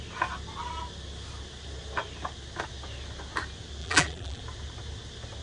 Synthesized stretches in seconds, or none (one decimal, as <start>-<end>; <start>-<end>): 3.8-4.4